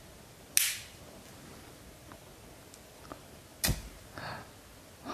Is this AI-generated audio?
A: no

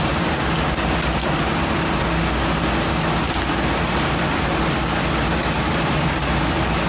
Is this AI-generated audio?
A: no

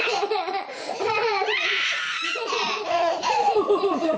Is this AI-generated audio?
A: yes